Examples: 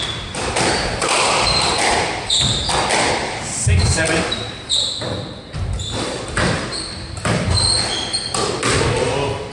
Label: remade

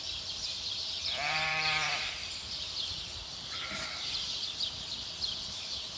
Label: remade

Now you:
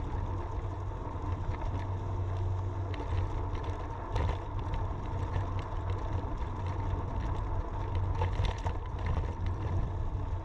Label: recorded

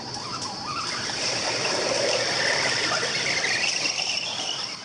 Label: recorded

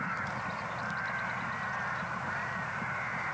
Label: recorded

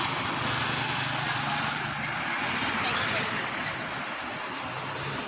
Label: remade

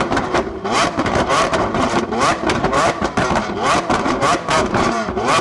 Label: remade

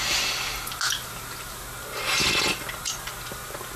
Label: recorded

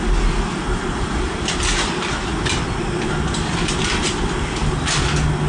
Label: recorded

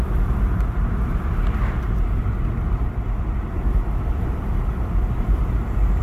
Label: remade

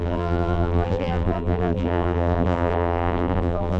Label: remade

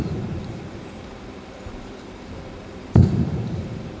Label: remade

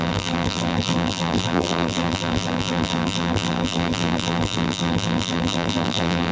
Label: remade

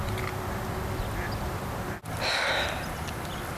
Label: recorded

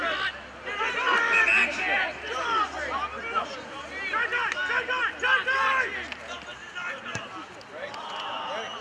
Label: recorded